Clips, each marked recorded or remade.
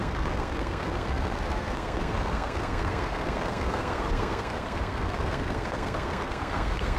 remade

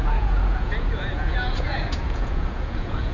remade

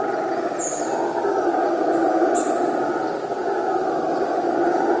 recorded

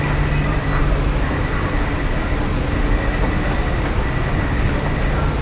recorded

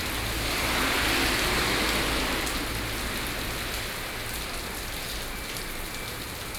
recorded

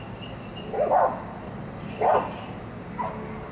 recorded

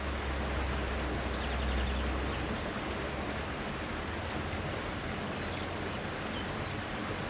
recorded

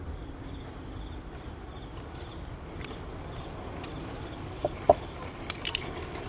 remade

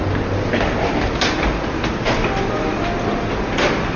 recorded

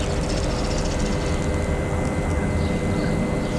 recorded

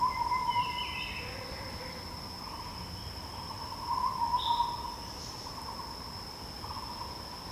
recorded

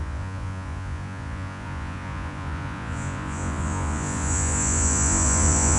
remade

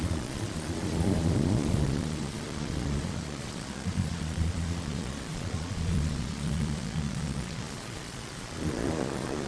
remade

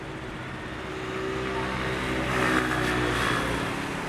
recorded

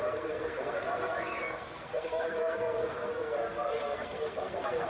remade